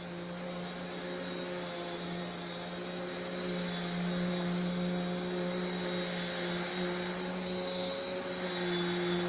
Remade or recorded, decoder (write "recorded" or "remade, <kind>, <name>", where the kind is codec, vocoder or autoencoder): recorded